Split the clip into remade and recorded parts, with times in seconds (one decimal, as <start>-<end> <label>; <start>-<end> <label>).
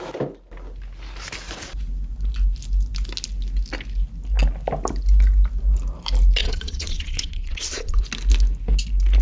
0.0-6.4 recorded; 6.4-8.0 remade; 8.0-9.2 recorded